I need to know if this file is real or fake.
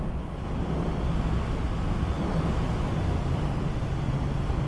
real